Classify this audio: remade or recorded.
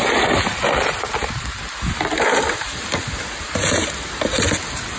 recorded